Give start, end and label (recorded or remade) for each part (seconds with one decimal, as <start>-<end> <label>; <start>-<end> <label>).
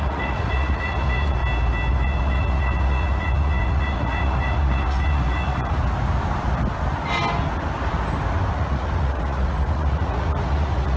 0.0-1.4 remade; 1.4-1.9 recorded; 1.9-5.8 remade; 5.8-8.5 recorded; 8.5-11.0 remade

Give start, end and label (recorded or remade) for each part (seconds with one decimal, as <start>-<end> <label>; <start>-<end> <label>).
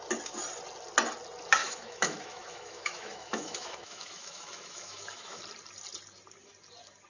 0.0-1.6 recorded; 1.6-5.4 remade; 5.4-7.1 recorded